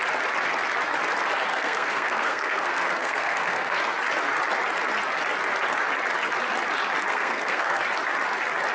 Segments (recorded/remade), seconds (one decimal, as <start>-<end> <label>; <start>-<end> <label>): 0.0-1.5 recorded; 1.5-3.8 remade; 3.8-7.1 recorded; 7.1-7.8 remade; 7.8-8.7 recorded